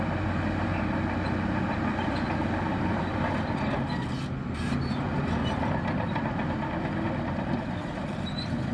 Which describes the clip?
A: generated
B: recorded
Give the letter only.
B